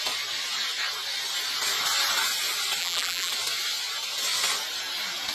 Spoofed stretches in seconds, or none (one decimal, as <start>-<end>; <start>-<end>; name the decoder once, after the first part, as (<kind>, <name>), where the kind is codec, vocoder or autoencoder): 2.8-3.3 (vocoder, BigVGAN v2)